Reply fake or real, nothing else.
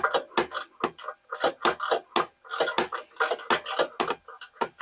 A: real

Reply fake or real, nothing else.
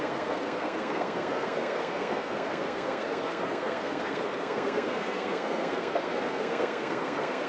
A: fake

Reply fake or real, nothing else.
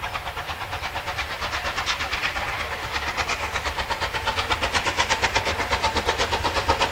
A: real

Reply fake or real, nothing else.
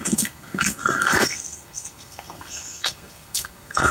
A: fake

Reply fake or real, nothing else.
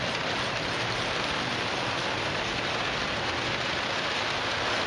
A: real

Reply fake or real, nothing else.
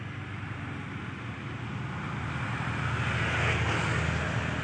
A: real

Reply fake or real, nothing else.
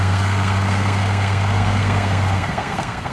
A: fake